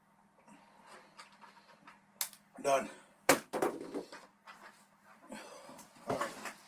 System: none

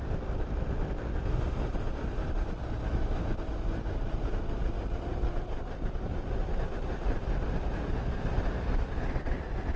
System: vocoder, BigVGAN v2